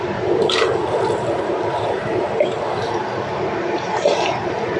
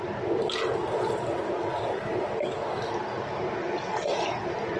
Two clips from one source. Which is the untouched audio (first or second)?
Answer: second